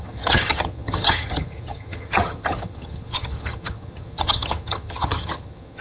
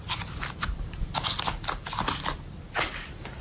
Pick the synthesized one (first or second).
first